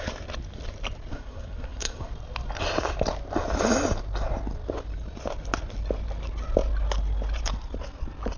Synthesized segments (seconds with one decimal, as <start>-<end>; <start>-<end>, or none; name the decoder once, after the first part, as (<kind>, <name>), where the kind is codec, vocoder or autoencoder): 1.1-2.1 (codec, SNAC)